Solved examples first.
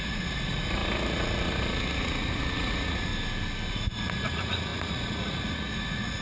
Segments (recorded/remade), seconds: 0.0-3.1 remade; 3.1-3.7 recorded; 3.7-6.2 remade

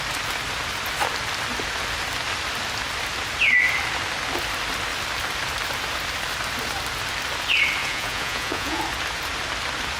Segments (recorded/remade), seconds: 0.0-7.8 recorded; 7.8-8.8 remade; 8.8-10.0 recorded

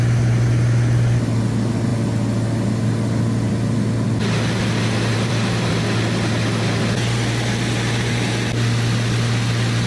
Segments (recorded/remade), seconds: 0.0-5.1 recorded; 5.1-5.7 remade; 5.7-9.9 recorded

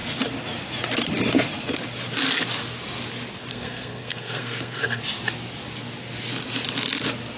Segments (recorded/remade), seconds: 0.0-3.5 recorded; 3.5-5.0 remade; 5.0-7.4 recorded